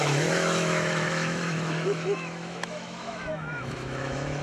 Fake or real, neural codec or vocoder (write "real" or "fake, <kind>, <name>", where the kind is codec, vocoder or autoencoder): fake, autoencoder, DAC-VAE